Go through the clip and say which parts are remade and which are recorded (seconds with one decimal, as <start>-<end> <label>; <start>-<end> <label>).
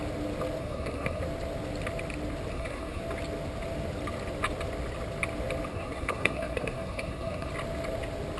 0.0-0.6 recorded; 0.6-1.2 remade; 1.2-2.5 recorded; 2.5-3.0 remade; 3.0-5.7 recorded; 5.7-7.5 remade; 7.5-8.4 recorded